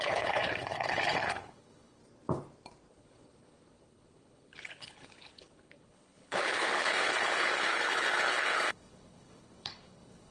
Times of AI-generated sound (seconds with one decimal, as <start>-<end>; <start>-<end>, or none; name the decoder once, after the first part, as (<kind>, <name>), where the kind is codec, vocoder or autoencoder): 0.0-2.0 (codec, HILCodec); 2.9-10.3